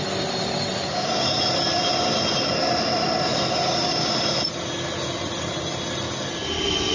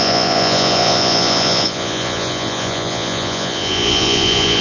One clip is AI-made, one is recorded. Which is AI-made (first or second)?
second